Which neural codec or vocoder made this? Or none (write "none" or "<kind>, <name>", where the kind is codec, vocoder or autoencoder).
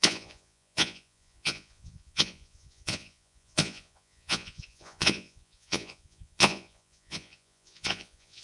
vocoder, Vocos